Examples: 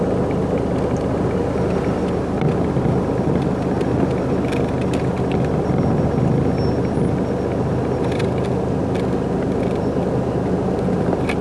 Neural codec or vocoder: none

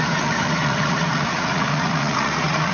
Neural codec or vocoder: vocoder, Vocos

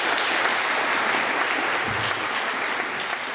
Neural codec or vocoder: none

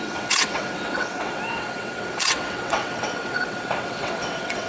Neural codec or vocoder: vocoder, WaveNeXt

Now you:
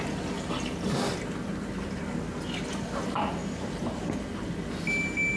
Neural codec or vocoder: none